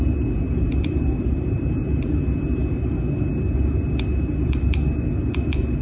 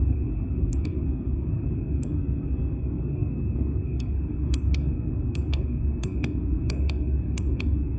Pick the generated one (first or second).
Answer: second